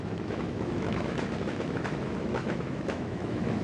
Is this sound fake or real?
fake